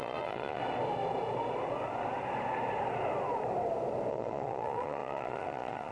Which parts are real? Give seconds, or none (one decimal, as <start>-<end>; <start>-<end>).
0.6-4.1

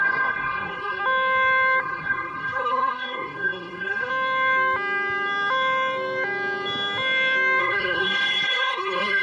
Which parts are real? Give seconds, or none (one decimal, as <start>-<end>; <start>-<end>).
1.0-1.8; 4.1-7.6

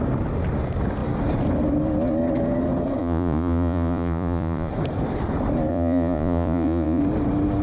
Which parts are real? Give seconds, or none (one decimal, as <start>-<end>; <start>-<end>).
0.0-3.0; 4.7-5.7; 7.0-7.6

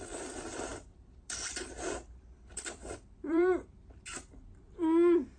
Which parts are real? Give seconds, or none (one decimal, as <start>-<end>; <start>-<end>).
0.0-0.7; 3.9-5.4